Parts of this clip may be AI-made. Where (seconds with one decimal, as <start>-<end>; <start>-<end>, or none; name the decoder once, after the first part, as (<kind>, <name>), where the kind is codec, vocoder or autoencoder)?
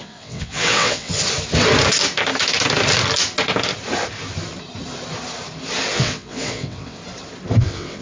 0.0-1.1 (vocoder, WaveNeXt); 5.9-7.0; 7.6-8.0